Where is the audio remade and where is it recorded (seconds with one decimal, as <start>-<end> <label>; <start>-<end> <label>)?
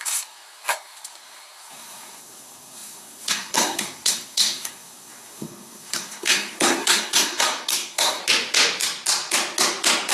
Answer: 0.0-8.2 remade; 8.2-10.1 recorded